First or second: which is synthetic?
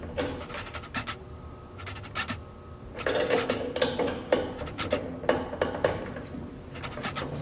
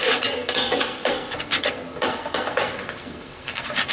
second